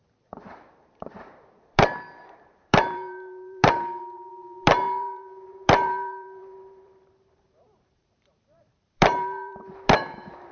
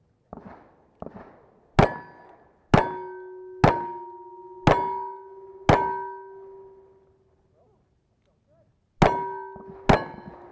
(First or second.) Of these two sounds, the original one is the second